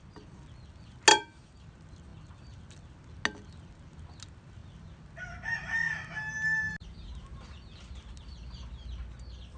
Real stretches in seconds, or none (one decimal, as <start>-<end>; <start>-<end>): 0.0-1.1; 1.6-9.6